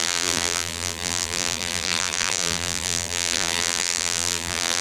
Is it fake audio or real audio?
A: fake